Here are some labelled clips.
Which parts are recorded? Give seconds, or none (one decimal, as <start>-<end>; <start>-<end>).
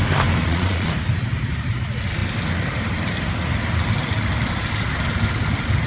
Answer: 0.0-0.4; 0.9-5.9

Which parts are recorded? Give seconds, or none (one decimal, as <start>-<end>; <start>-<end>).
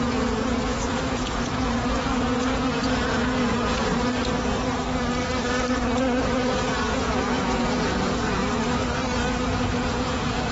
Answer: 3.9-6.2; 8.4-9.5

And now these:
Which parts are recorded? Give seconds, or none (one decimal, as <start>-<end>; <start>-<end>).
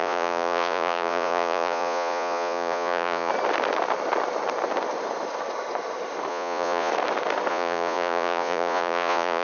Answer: 3.3-6.3; 6.9-7.5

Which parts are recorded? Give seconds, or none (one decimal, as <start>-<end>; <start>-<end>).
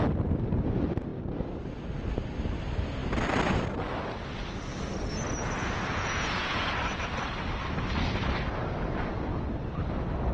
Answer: 0.0-5.6; 6.8-10.3